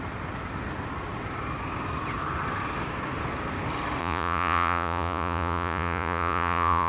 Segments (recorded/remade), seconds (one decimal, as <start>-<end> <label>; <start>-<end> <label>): 0.0-4.0 recorded; 4.0-6.9 remade